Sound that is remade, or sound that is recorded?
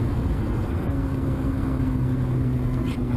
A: remade